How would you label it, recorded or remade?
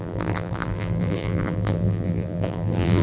remade